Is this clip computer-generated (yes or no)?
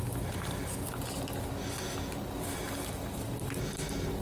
no